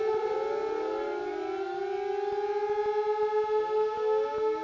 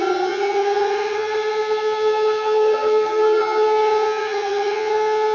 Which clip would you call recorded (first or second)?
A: first